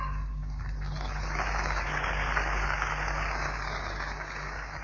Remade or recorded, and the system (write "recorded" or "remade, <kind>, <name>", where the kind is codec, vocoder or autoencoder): remade, codec, DAC